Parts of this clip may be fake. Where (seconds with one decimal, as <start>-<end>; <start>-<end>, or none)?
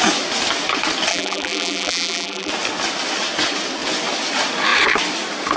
1.1-2.5